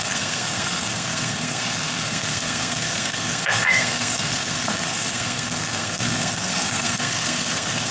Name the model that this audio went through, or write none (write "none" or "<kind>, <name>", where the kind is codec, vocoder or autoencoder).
codec, SNAC